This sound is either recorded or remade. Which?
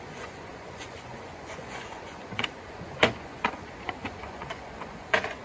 remade